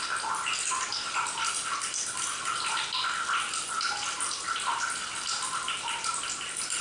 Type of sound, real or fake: real